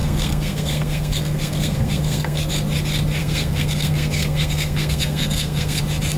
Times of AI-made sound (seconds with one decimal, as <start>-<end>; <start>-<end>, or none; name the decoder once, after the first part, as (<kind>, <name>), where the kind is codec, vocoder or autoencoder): 0.0-2.5 (codec, SNAC); 3.2-5.8